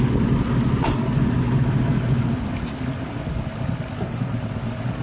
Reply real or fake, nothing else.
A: real